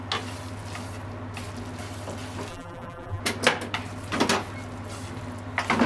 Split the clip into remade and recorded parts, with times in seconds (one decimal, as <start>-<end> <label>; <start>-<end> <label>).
0.0-2.5 recorded; 2.5-3.2 remade; 3.2-5.9 recorded